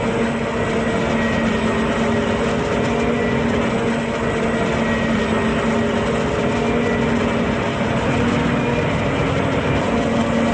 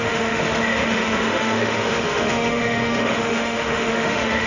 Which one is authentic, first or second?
first